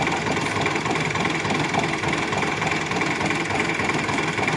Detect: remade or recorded remade